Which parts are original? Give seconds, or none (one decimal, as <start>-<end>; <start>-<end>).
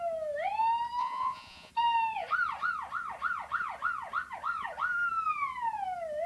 0.0-1.0; 1.7-6.3